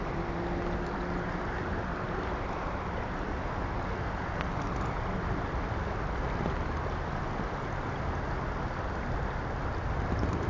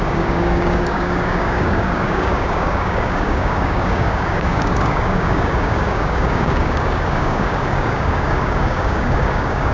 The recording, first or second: first